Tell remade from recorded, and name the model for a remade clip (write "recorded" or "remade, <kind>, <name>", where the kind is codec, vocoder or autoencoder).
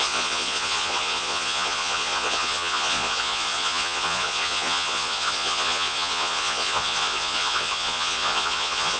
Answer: remade, vocoder, Vocos